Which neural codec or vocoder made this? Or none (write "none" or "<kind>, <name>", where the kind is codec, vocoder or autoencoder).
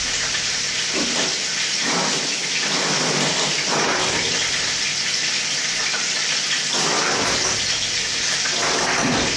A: none